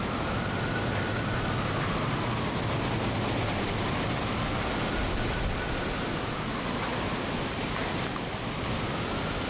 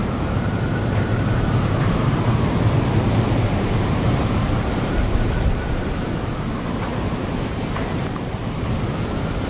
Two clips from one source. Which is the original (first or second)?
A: first